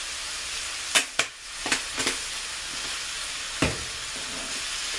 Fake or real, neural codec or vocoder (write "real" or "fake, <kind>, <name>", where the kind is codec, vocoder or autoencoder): real